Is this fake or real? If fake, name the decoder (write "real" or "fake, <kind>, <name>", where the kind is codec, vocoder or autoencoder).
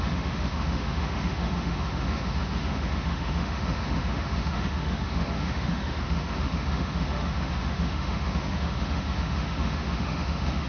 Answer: fake, autoencoder, DAC-VAE